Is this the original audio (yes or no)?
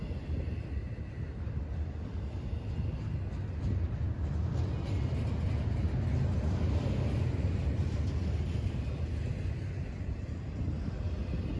yes